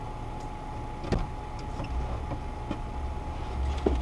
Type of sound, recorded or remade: recorded